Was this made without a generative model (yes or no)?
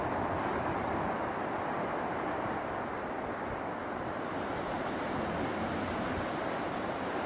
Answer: yes